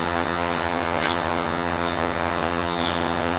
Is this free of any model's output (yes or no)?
no